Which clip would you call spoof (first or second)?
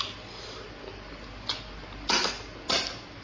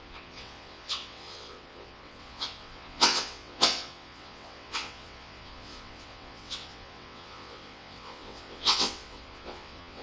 second